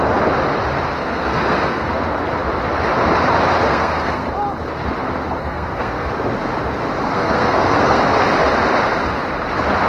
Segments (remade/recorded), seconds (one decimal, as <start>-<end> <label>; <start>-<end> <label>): 0.0-1.0 recorded; 1.0-1.9 remade; 1.9-3.7 recorded; 3.7-4.3 remade; 4.3-5.4 recorded; 5.4-6.1 remade; 6.1-7.1 recorded; 7.1-8.0 remade; 8.0-9.9 recorded